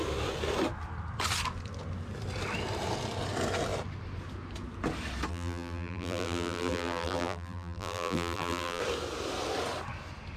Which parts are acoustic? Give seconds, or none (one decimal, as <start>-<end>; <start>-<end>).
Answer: 0.0-5.3; 8.8-10.4